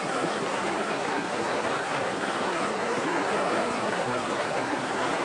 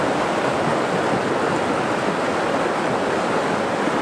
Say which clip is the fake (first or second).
first